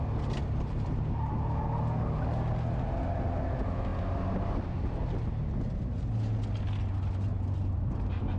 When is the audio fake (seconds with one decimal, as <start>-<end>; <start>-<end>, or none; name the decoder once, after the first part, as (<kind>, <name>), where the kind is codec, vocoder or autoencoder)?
0.4-1.3 (vocoder, BigVGAN v2)

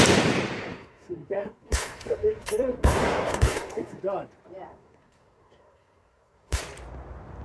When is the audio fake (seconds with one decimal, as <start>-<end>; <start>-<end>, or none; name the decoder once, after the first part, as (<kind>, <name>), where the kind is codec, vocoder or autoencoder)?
0.7-4.0 (codec, SNAC); 4.7-6.6

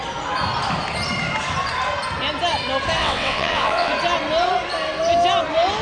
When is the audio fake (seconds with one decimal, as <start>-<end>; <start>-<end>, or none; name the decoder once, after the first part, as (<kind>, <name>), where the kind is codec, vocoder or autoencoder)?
3.0-3.9 (vocoder, WaveNeXt)

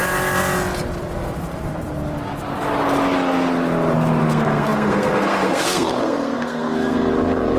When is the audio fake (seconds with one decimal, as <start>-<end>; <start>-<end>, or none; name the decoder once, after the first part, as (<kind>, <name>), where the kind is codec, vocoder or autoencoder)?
4.2-7.6 (codec, SNAC)

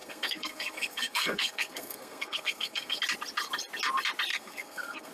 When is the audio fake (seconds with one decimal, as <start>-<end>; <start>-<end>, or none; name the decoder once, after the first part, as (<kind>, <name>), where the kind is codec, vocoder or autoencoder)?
0.0-3.0 (codec, SNAC); 4.3-5.1